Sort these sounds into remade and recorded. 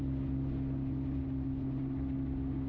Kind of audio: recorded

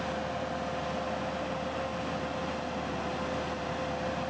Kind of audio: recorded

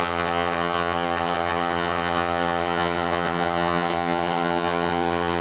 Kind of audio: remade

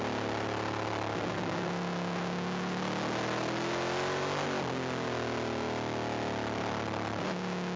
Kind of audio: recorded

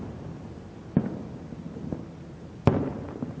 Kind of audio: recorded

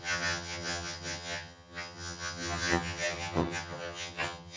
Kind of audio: remade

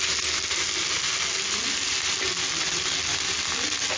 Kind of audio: recorded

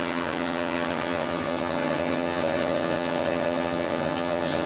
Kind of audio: remade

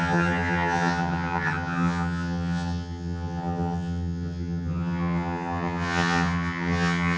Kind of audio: remade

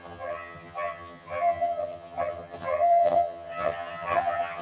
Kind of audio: remade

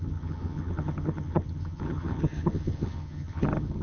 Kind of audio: remade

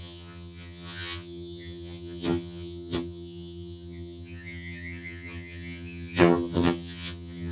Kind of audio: remade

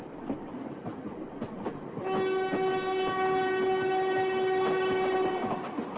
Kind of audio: recorded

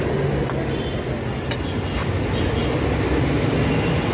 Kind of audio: recorded